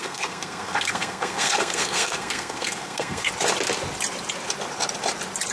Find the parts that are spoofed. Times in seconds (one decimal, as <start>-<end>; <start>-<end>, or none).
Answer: 0.0-3.3